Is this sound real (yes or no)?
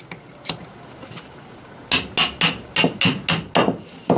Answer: yes